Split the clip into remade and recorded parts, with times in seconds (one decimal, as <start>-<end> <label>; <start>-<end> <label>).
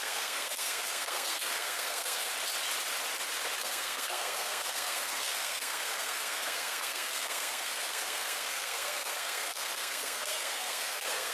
0.0-2.3 remade; 2.3-3.6 recorded; 3.6-11.3 remade